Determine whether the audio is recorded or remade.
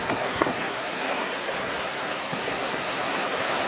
remade